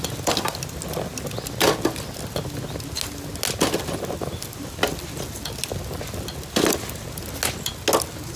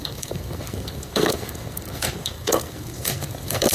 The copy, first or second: second